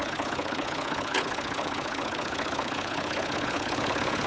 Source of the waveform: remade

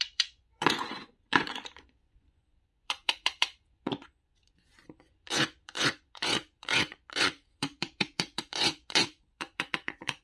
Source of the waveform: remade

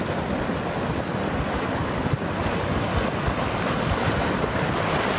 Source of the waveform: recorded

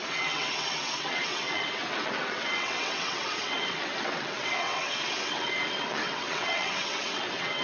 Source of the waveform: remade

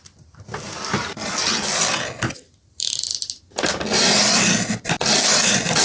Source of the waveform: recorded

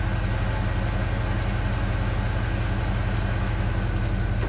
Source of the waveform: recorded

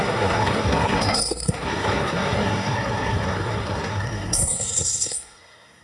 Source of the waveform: remade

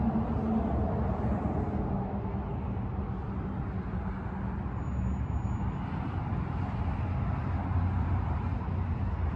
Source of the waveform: recorded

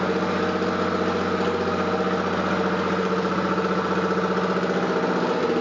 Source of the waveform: recorded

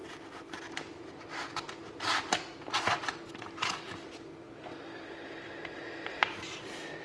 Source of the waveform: recorded